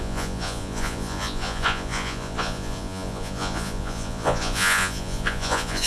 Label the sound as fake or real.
fake